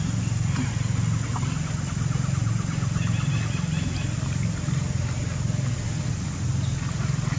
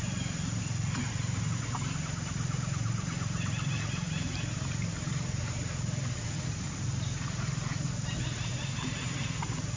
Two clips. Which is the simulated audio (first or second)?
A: second